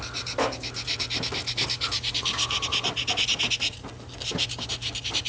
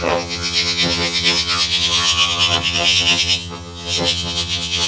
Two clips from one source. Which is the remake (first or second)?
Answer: second